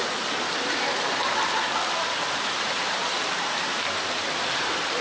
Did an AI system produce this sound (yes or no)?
no